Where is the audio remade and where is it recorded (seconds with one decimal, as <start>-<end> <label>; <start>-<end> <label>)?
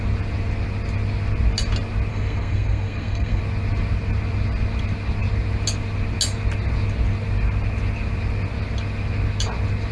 0.0-2.1 recorded; 2.1-3.4 remade; 3.4-9.9 recorded